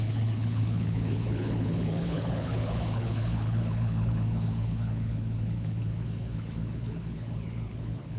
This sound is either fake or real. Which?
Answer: fake